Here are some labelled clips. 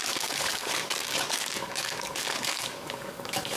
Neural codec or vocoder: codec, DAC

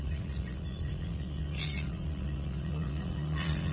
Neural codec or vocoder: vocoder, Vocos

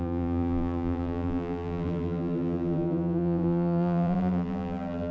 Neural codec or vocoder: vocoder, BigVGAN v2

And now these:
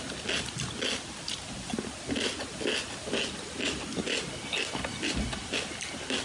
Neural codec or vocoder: none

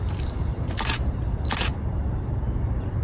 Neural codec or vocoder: none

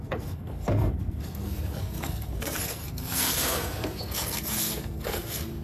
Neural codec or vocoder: codec, SNAC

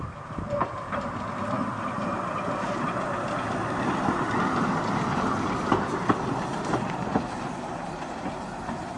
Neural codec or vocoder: none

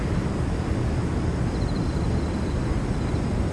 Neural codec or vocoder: none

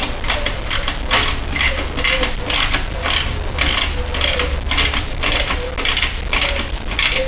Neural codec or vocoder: none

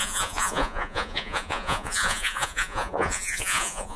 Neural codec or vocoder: vocoder, Vocos